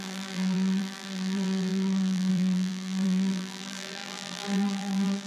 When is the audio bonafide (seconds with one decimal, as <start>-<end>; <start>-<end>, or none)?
none

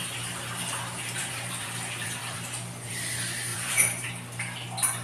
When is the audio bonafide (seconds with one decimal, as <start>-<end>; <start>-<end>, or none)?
0.0-1.2; 2.9-3.5; 4.1-5.0

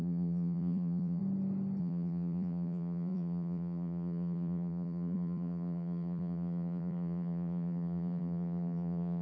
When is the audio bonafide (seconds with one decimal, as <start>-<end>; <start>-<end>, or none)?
1.2-1.8

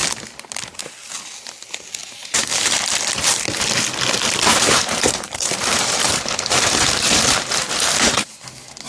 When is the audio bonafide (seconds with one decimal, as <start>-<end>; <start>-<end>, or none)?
0.0-2.0; 3.4-4.5; 7.9-8.9